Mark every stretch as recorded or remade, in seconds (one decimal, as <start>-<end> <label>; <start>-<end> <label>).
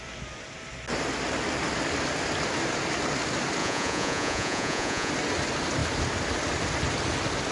0.0-3.6 recorded; 3.6-5.1 remade; 5.1-7.5 recorded